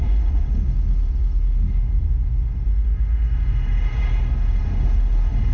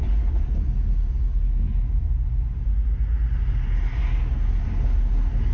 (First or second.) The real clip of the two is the second